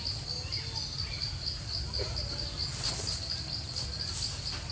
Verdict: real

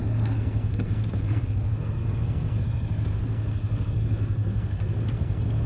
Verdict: fake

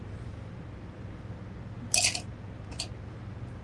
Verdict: real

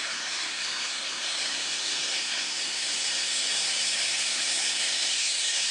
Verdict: fake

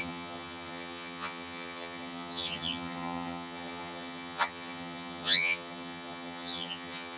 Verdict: fake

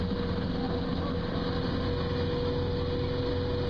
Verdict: real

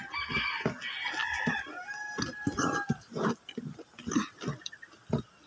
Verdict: real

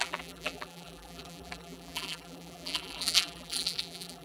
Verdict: fake